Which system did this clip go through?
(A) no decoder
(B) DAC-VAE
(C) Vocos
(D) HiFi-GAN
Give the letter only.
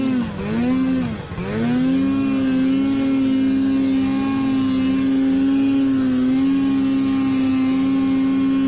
A